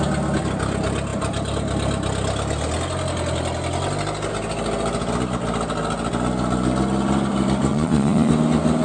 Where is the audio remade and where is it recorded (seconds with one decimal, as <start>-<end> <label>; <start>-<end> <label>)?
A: 0.0-7.7 recorded; 7.7-8.3 remade; 8.3-8.8 recorded